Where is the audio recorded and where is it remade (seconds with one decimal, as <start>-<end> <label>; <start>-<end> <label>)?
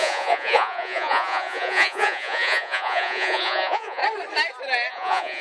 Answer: 0.0-4.0 remade; 4.0-4.9 recorded; 4.9-5.4 remade